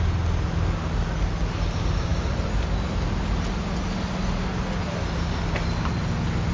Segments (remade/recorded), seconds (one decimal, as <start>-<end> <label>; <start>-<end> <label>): 0.0-6.5 recorded

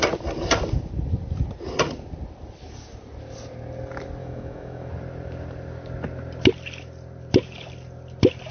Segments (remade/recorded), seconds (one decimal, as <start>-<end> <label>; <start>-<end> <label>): 0.0-4.2 recorded; 4.2-4.9 remade; 4.9-8.5 recorded